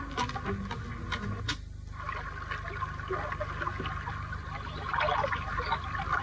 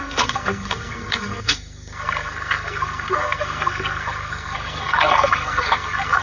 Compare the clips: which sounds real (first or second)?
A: first